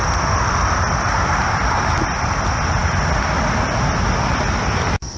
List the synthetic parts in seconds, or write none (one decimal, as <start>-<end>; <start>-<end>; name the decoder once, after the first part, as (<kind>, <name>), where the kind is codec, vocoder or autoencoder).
none